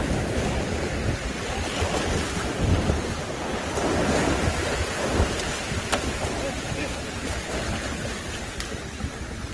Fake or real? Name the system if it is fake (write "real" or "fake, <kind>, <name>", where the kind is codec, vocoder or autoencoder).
real